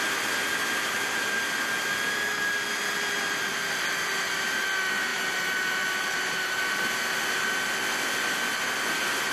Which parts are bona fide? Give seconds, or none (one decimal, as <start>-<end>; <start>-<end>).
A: 0.0-0.6; 1.5-5.1; 6.6-9.3